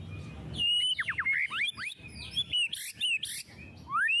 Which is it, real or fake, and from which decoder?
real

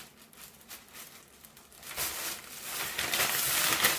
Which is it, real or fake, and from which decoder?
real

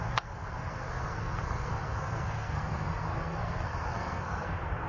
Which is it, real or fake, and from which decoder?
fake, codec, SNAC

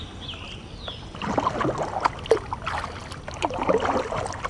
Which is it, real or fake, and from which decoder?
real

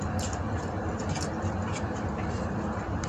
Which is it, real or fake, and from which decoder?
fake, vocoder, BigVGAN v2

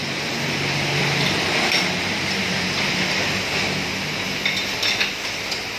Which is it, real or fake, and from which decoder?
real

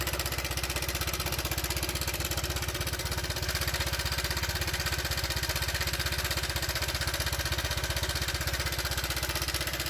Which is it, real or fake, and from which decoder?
real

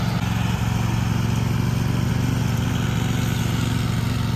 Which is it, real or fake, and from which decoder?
real